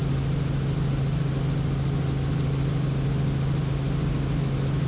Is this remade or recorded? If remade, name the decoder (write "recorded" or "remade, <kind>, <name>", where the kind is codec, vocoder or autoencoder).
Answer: recorded